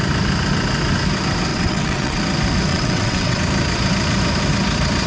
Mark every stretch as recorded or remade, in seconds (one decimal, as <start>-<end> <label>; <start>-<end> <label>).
0.0-1.5 recorded; 1.5-2.2 remade; 2.2-2.7 recorded; 2.7-3.4 remade; 3.4-5.1 recorded